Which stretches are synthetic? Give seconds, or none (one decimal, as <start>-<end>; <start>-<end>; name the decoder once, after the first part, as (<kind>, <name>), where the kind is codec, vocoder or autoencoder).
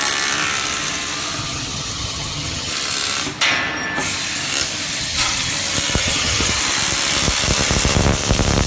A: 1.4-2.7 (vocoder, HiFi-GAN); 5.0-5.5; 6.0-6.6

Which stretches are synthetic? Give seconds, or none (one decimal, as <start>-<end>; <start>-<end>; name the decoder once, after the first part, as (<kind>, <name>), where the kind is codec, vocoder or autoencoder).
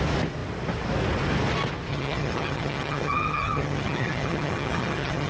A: 1.9-5.3 (vocoder, HiFi-GAN)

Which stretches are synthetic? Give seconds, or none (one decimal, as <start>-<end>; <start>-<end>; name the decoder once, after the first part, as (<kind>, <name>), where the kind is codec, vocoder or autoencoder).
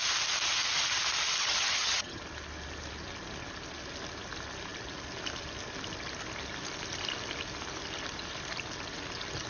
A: 1.4-2.2 (vocoder, HiFi-GAN)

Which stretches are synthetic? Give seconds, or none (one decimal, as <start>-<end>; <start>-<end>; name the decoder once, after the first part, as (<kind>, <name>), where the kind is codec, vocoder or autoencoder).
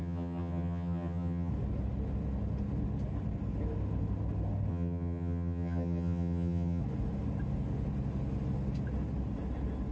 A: 0.0-1.5 (vocoder, HiFi-GAN); 4.7-6.8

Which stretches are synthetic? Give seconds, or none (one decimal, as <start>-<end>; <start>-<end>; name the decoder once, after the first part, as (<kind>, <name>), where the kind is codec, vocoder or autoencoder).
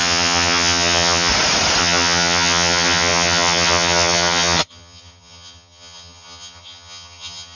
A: 0.0-1.3 (vocoder, HiFi-GAN); 1.8-7.5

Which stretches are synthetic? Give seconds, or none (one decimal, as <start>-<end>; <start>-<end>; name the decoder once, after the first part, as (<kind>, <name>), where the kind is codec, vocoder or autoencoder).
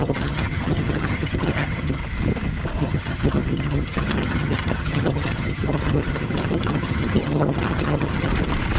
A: 0.0-2.0 (vocoder, HiFi-GAN); 2.8-8.3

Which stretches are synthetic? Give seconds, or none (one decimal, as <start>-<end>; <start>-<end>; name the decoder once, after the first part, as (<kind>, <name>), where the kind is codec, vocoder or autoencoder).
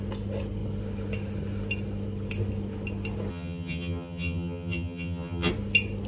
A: 3.3-5.5 (vocoder, HiFi-GAN)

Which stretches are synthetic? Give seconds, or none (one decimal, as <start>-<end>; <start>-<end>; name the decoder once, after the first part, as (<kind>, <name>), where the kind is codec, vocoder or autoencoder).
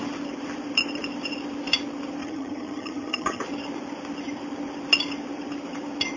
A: 2.2-3.4 (vocoder, HiFi-GAN)